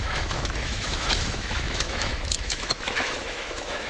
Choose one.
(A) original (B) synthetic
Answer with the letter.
B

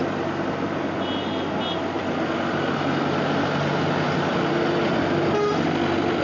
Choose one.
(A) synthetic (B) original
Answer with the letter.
B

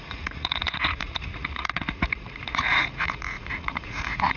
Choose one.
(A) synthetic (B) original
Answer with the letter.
A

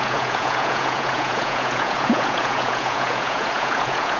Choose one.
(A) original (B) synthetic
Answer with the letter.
B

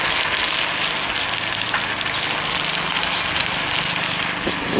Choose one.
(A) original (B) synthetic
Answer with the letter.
A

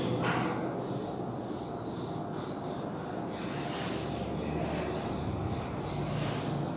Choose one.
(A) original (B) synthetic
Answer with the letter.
A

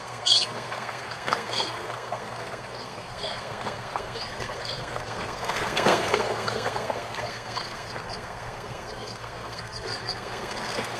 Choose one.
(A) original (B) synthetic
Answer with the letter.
B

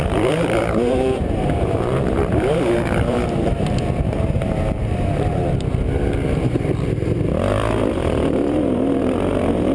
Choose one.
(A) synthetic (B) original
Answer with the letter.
A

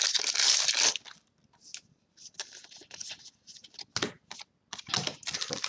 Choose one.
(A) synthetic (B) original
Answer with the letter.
B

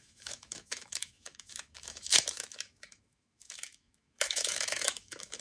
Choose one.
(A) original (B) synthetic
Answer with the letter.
B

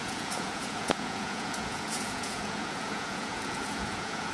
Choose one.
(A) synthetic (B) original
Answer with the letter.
A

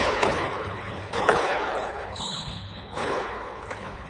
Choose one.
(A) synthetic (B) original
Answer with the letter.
A